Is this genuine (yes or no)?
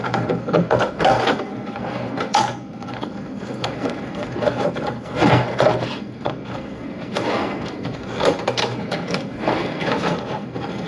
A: no